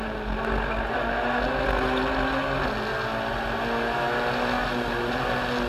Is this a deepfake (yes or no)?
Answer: no